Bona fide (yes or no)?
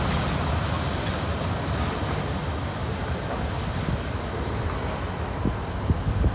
yes